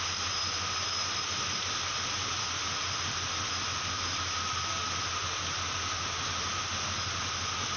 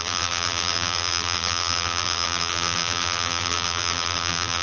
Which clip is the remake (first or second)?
second